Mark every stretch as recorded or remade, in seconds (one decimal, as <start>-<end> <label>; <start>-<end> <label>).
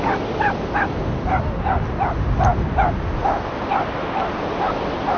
0.0-5.2 recorded